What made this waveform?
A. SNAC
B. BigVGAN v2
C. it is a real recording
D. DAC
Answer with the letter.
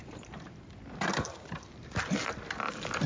C